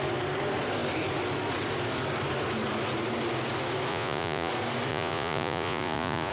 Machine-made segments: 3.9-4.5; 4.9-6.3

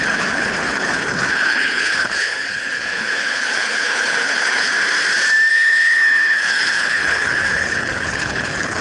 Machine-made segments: 0.0-4.7; 5.5-8.8